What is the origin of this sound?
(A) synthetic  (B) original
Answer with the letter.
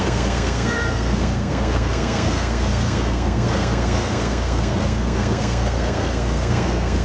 A